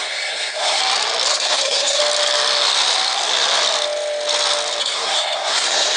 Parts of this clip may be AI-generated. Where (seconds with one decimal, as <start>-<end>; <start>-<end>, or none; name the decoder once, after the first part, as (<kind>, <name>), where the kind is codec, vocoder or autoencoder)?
0.0-0.8 (codec, SNAC); 1.3-2.0; 4.8-6.0